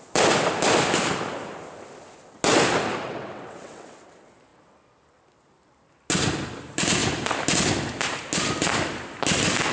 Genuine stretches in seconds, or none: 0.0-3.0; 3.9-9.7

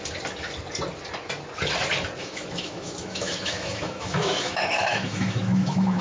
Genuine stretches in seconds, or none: 0.0-2.2

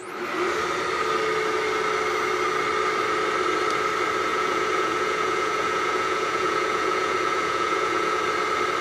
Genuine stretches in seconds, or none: 0.0-4.3; 8.2-8.8

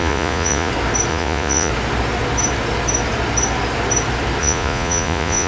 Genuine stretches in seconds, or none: 0.7-1.1; 1.7-4.4

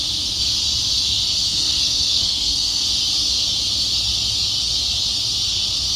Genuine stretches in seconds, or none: 0.0-1.5; 2.8-6.0

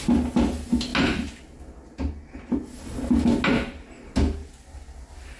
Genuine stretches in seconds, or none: 0.0-5.4

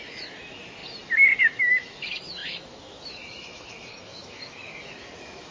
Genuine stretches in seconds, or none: 0.8-1.4